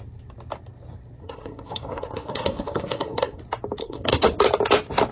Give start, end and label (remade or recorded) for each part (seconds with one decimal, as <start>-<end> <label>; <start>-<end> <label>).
0.0-1.2 recorded; 1.2-3.4 remade; 3.4-3.8 recorded; 3.8-4.4 remade; 4.4-5.1 recorded